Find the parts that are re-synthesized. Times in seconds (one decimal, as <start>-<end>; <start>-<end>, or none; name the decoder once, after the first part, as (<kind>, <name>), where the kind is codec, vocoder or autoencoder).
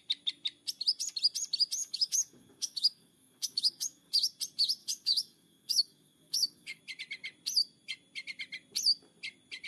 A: 1.8-4.1 (codec, DAC); 4.8-6.8